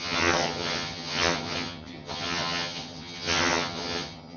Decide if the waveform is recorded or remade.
remade